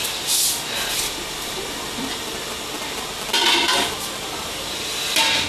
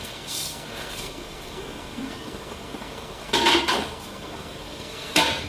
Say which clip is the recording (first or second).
first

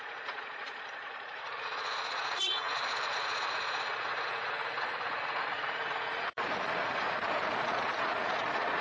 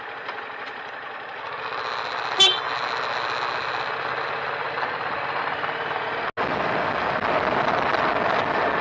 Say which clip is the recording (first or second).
second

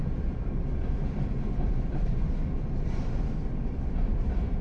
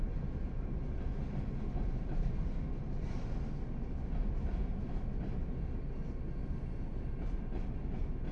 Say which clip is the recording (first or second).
second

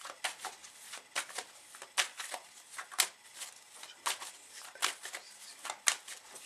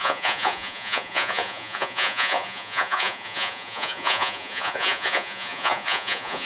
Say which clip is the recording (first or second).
first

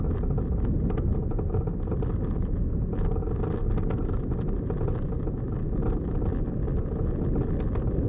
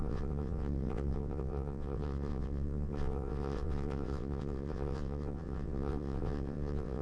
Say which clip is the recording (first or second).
first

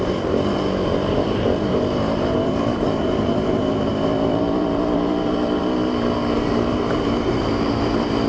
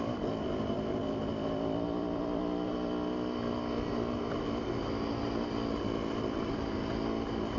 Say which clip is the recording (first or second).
second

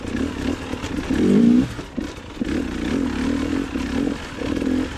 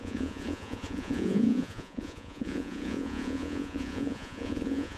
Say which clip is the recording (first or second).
first